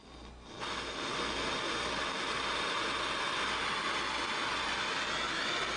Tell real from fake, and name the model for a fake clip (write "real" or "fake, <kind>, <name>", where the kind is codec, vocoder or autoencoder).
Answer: real